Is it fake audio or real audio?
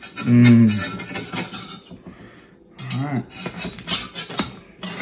real